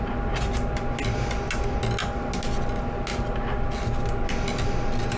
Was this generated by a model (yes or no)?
no